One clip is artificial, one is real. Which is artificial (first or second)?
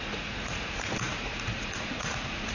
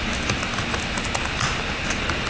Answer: first